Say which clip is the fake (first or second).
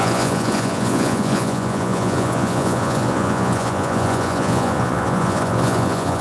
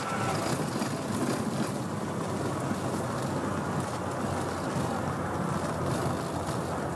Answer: first